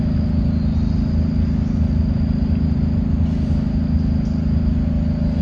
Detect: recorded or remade recorded